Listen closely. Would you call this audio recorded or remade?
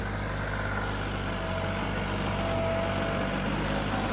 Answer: recorded